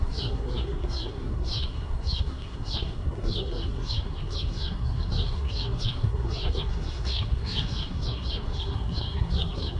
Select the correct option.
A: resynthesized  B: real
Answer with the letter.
A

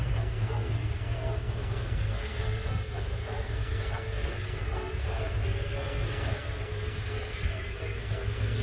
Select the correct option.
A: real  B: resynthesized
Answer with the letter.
B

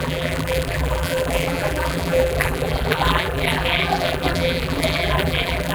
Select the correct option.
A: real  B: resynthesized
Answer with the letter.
B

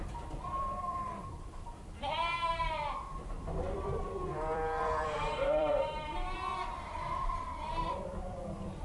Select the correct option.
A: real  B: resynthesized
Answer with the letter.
B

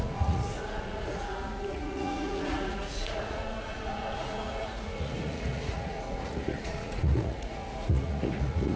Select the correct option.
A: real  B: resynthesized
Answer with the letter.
B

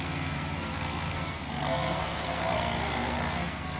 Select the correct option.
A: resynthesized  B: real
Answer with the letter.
A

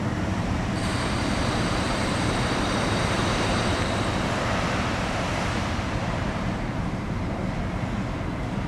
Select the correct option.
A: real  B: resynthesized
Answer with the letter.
B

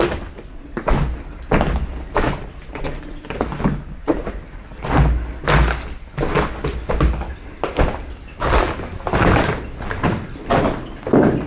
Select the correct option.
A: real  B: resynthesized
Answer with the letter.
A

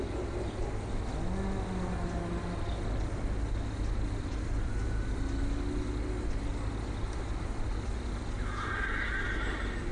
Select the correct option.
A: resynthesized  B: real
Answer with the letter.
B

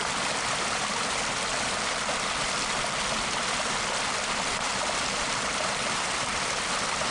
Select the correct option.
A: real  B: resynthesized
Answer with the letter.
A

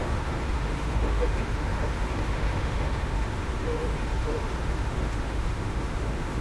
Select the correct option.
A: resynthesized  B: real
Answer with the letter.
A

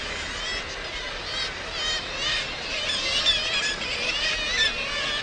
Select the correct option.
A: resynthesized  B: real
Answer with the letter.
B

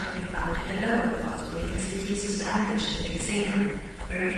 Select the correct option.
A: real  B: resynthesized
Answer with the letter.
B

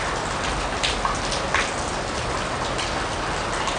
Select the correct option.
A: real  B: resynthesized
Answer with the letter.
A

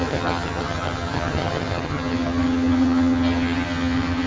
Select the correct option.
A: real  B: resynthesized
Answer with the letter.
B